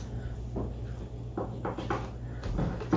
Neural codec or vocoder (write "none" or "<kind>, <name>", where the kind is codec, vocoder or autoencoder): none